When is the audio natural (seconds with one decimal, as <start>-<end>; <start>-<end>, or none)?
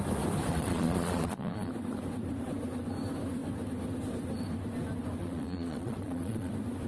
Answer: 0.0-0.5; 1.7-5.2; 6.5-6.9